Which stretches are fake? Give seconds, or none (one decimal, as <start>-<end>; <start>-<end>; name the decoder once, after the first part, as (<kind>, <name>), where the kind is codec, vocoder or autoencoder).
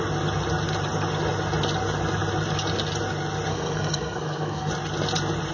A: 3.5-4.7 (codec, SNAC)